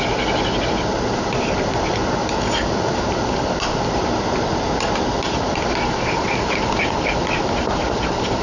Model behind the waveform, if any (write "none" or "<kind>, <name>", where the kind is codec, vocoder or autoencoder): none